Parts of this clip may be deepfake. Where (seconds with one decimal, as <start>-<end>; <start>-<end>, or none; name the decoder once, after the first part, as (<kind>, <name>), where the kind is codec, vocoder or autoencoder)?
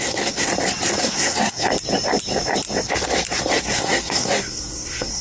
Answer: 0.0-0.5 (codec, SNAC); 1.0-1.7; 3.6-5.2